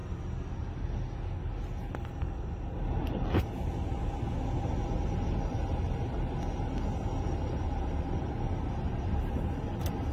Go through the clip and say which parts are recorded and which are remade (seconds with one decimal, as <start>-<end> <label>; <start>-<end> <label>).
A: 0.0-10.1 recorded

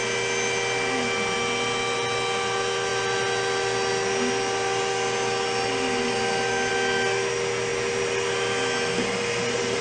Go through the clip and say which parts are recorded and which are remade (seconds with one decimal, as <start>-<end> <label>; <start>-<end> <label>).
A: 0.0-9.8 recorded